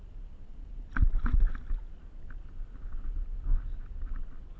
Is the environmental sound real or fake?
real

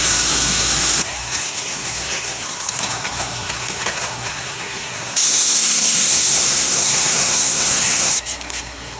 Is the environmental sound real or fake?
fake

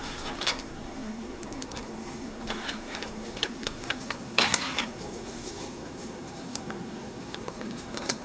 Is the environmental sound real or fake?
fake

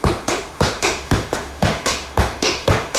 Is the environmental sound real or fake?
fake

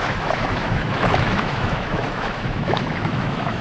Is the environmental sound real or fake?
fake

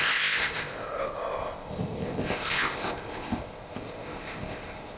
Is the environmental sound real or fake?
fake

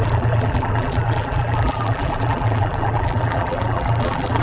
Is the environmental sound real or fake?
fake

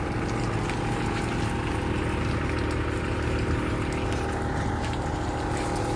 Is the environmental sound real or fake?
real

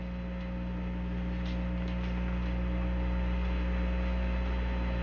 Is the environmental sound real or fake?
real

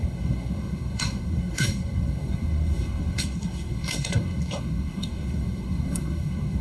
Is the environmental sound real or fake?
fake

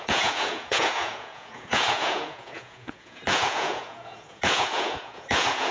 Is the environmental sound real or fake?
fake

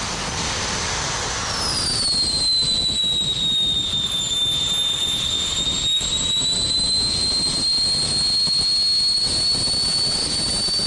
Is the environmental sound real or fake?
real